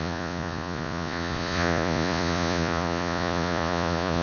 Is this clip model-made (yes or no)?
yes